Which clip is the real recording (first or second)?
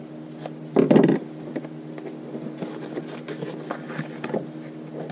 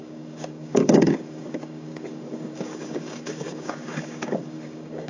first